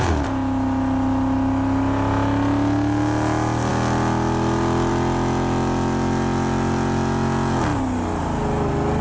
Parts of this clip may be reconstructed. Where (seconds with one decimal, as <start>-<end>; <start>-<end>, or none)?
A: none

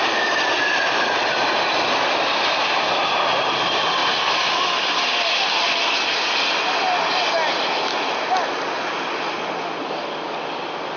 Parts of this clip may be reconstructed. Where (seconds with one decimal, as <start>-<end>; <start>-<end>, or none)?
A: none

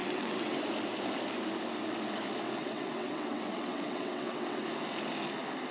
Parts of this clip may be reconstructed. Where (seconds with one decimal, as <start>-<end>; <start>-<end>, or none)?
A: 0.0-0.6; 2.6-4.6

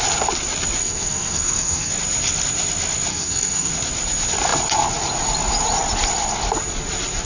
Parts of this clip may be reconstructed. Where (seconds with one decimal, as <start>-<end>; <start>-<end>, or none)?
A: 0.8-1.9; 3.1-3.7

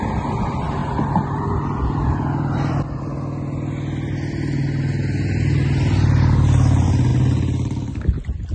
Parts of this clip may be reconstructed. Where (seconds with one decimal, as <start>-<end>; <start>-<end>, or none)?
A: 0.8-3.0; 7.1-7.9